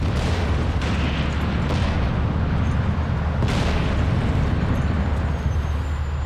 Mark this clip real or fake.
real